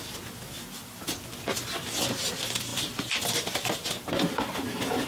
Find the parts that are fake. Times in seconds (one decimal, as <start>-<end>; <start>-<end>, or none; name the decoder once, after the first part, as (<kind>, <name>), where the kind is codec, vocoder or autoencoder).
none